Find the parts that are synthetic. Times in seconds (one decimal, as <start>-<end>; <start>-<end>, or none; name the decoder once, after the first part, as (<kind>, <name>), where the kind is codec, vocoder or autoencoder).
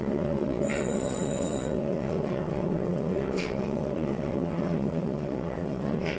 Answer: 0.0-6.2 (vocoder, WaveNeXt)